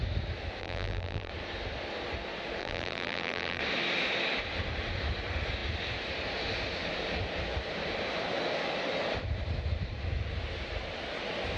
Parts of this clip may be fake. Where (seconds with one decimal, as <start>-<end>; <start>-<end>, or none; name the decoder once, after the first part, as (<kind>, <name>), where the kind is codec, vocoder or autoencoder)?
0.6-1.3 (vocoder, BigVGAN v2); 2.6-3.6